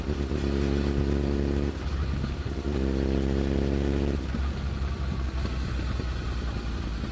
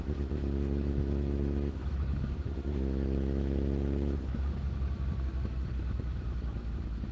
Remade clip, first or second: second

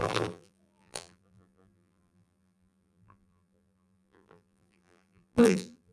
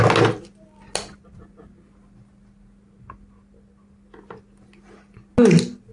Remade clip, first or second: first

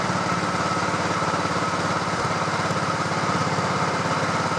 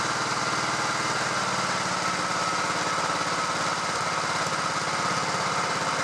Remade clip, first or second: first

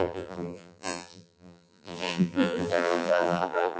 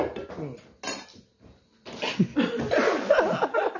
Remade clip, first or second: first